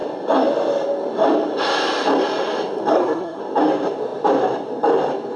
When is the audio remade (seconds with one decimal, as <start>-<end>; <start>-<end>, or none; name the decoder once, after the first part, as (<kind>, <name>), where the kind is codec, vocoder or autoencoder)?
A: 2.9-3.4 (codec, SNAC)